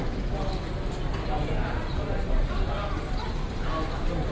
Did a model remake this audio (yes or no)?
no